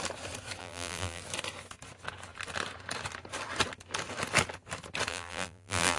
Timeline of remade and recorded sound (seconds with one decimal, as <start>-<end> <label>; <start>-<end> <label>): 0.0-0.6 recorded; 0.6-1.2 remade; 1.2-5.1 recorded; 5.1-6.0 remade